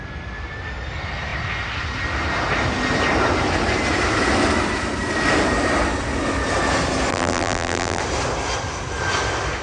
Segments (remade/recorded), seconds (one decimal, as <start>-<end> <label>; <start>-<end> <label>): 0.0-7.1 recorded; 7.1-8.0 remade; 8.0-9.6 recorded